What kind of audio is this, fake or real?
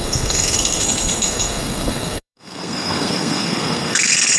fake